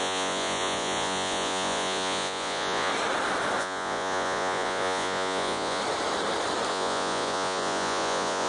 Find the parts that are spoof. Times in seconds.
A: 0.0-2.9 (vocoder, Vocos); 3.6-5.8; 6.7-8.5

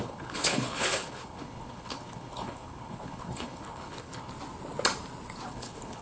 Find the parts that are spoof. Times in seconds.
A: 0.0-4.3 (codec, HILCodec); 5.5-6.0